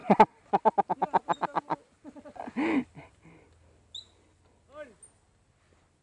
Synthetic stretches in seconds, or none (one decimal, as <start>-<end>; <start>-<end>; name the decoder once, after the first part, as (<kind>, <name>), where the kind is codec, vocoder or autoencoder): none